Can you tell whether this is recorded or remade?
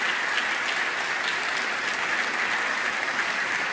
recorded